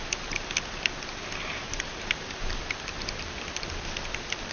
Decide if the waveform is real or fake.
fake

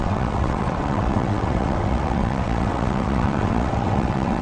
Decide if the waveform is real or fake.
fake